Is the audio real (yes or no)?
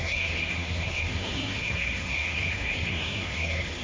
no